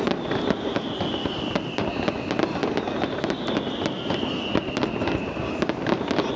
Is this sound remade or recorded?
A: recorded